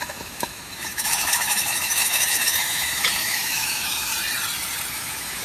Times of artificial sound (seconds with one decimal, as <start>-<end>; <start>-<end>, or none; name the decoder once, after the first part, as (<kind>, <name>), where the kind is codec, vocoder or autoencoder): 0.0-4.1 (autoencoder, DAC-VAE); 4.9-5.4